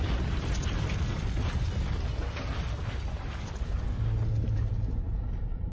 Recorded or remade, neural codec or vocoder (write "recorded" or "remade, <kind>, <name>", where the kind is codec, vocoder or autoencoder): recorded